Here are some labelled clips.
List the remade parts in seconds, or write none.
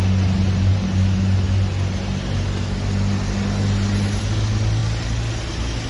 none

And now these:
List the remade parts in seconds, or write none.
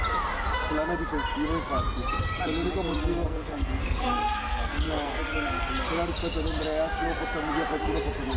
3.0-5.7 (codec, SNAC)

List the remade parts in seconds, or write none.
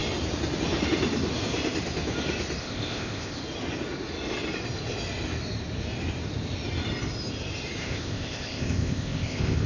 2.6-3.4 (codec, ZipCodec); 7.8-9.7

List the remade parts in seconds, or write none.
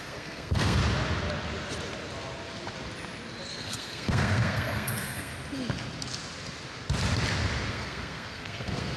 0.0-0.8 (codec, SNAC); 3.5-5.3; 7.7-9.0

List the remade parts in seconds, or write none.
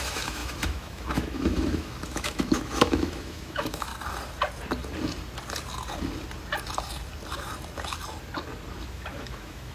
0.0-3.9 (autoencoder, DAC-VAE); 8.9-9.7